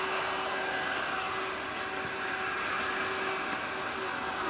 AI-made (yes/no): no